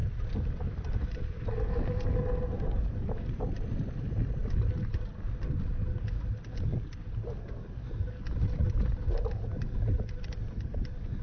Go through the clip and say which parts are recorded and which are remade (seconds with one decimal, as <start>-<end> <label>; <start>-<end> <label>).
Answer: 0.0-11.2 recorded